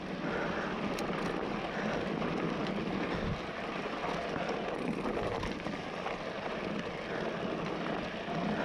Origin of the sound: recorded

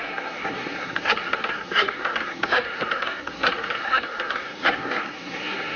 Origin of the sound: remade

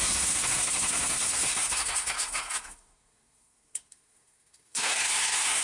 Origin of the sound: remade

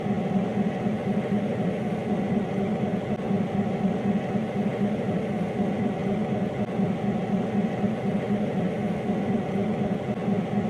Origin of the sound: recorded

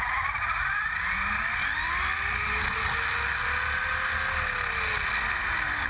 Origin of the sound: recorded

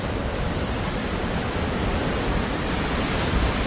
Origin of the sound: recorded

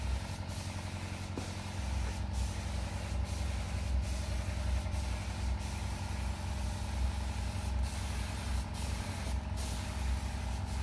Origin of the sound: recorded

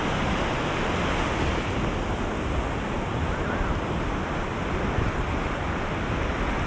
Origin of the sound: recorded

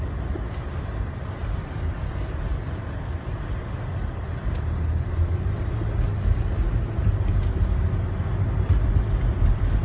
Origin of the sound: recorded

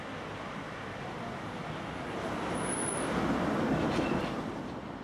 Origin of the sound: recorded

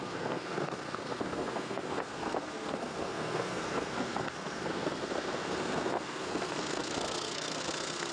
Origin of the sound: remade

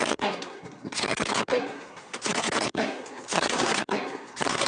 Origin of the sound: remade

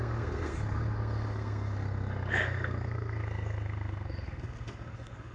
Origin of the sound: remade